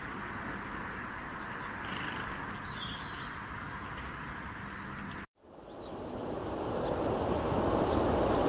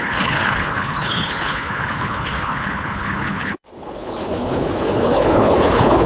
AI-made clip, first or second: second